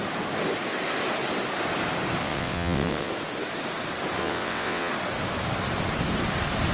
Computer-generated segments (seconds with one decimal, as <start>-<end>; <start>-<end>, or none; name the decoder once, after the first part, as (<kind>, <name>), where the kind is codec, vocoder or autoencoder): 2.2-3.1 (vocoder, WaveNeXt); 4.2-4.9